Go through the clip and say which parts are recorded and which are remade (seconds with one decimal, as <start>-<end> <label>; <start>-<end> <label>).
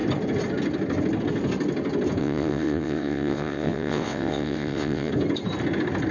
0.0-2.2 recorded; 2.2-5.1 remade; 5.1-6.1 recorded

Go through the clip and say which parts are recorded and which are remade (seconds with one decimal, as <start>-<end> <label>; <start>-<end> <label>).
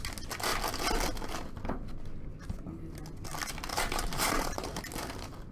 0.0-3.7 recorded; 3.7-4.8 remade; 4.8-5.5 recorded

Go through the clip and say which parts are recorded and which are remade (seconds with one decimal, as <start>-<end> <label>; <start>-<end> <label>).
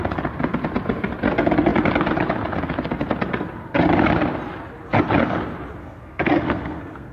0.0-5.8 recorded; 5.8-7.1 remade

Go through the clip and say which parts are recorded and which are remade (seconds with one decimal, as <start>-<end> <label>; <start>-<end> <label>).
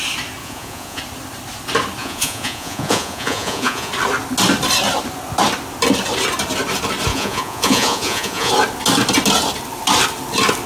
0.0-0.4 recorded; 0.4-1.0 remade; 1.0-2.0 recorded; 2.0-3.9 remade; 3.9-7.1 recorded; 7.1-8.5 remade; 8.5-10.7 recorded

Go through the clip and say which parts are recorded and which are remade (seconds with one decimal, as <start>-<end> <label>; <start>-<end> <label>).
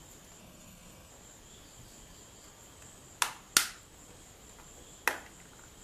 0.0-0.4 recorded; 0.4-1.1 remade; 1.1-5.8 recorded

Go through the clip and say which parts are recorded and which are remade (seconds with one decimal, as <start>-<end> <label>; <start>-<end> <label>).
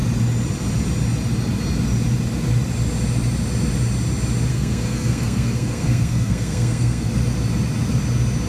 0.0-4.5 recorded; 4.5-7.1 remade; 7.1-8.5 recorded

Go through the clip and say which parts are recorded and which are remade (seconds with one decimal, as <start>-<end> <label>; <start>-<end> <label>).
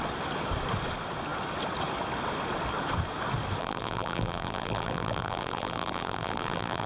0.0-3.6 recorded; 3.6-6.9 remade